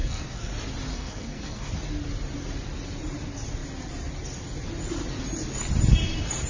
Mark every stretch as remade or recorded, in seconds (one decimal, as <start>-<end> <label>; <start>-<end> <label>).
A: 0.0-0.5 remade; 0.5-0.9 recorded; 0.9-1.7 remade; 1.7-6.5 recorded